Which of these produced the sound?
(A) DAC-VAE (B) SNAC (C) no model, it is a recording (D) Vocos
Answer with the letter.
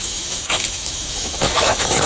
A